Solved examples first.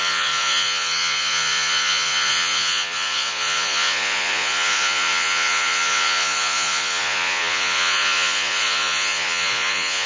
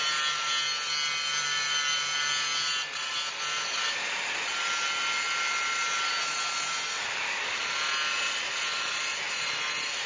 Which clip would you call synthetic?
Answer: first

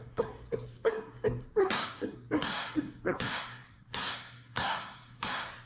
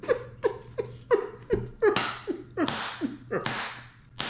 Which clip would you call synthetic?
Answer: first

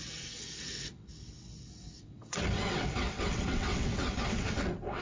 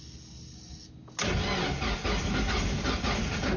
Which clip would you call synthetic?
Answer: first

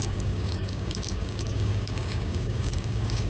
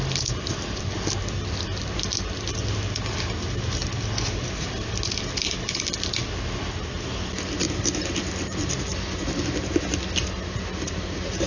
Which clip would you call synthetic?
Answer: first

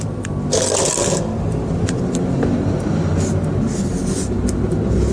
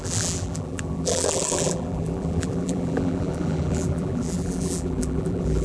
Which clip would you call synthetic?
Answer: second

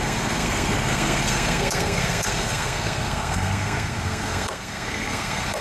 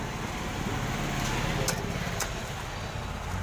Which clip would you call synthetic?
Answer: first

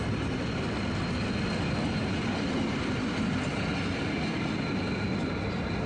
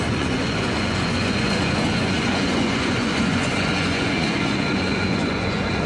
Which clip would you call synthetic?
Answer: second